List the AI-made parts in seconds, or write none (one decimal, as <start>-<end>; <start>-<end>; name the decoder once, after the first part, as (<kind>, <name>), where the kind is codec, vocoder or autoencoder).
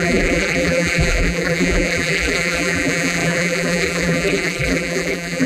0.0-5.5 (vocoder, BigVGAN v2)